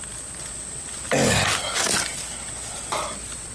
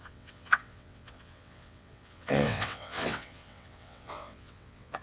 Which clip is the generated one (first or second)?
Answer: second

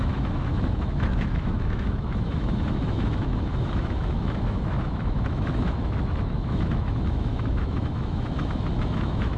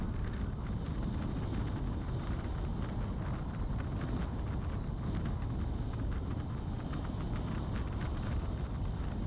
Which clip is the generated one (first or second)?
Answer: first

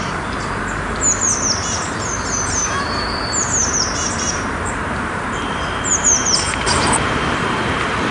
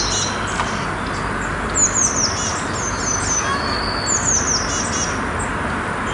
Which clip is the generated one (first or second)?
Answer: first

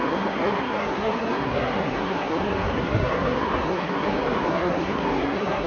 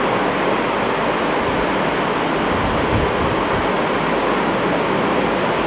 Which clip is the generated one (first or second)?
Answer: first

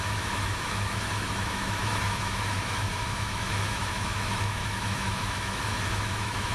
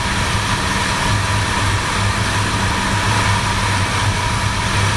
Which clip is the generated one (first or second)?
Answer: first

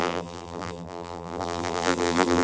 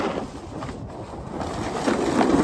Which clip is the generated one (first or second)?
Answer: first